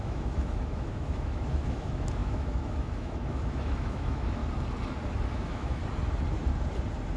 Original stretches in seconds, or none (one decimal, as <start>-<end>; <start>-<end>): 4.4-5.3; 5.8-7.2